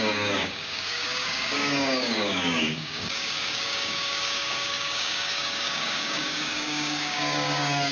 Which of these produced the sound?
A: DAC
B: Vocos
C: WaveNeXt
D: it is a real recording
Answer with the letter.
A